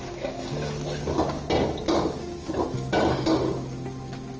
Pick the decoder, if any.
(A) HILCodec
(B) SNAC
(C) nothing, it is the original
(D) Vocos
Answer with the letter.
C